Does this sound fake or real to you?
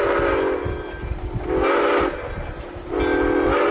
real